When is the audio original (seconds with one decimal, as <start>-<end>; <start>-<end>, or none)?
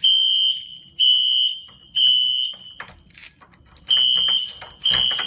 0.0-5.3